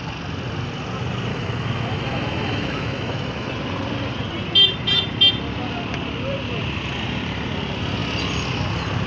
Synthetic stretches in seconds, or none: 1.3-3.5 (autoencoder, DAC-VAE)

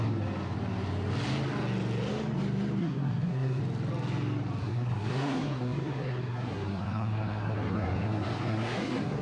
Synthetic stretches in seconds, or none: 2.8-3.6 (codec, SNAC); 4.6-9.2

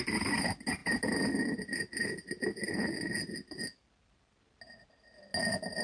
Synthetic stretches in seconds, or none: none

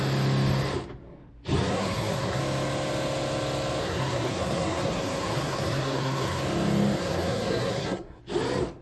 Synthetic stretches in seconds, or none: 1.7-2.4 (codec, SNAC); 3.8-6.4; 7.0-8.2

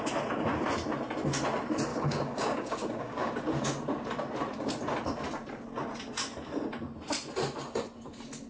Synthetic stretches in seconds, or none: 1.9-3.3 (codec, DAC)

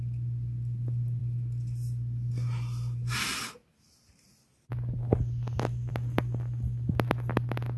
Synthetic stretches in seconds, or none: none

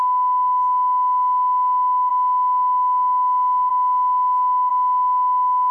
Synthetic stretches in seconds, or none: none

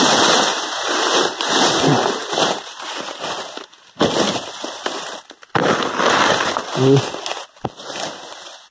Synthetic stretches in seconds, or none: none